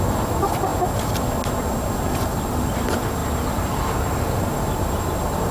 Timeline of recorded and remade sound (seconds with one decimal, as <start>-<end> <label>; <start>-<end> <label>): 0.0-0.7 remade; 0.7-2.1 recorded; 2.1-5.5 remade